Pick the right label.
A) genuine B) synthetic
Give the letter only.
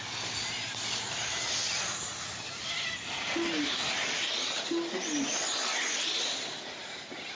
A